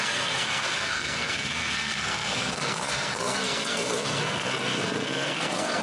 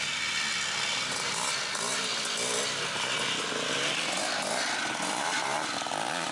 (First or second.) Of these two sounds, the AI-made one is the first